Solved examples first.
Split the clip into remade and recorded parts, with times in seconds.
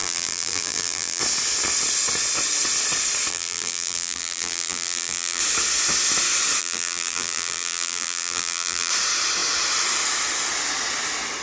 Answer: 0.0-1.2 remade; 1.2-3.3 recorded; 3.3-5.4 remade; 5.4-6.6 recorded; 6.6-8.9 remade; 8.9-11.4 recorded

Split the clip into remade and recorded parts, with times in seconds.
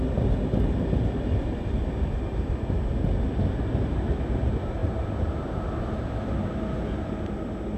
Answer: 0.0-7.8 recorded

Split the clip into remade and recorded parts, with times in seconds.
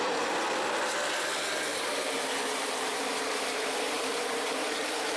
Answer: 0.0-1.7 recorded; 1.7-4.8 remade; 4.8-5.2 recorded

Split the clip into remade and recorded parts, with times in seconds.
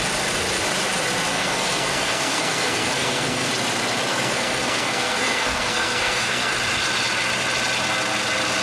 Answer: 0.0-1.3 recorded; 1.3-3.5 remade; 3.5-4.1 recorded; 4.1-6.5 remade; 6.5-8.6 recorded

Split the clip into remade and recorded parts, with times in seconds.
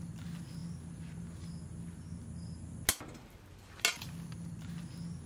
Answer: 0.0-5.3 recorded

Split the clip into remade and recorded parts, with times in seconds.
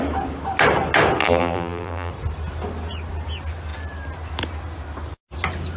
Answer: 0.0-1.2 recorded; 1.2-2.1 remade; 2.1-5.8 recorded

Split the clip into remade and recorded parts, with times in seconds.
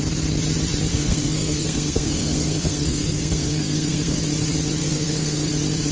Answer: 0.0-0.9 recorded; 0.9-4.2 remade; 4.2-4.8 recorded; 4.8-5.5 remade; 5.5-5.9 recorded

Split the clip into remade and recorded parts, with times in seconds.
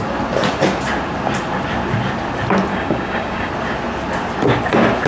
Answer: 0.0-2.7 recorded; 2.7-3.5 remade; 3.5-5.1 recorded